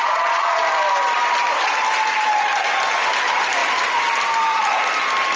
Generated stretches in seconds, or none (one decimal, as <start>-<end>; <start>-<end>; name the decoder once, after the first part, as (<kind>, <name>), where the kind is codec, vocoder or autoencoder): 0.0-0.6 (vocoder, Vocos)